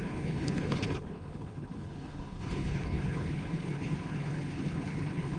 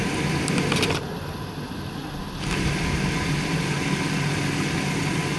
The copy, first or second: first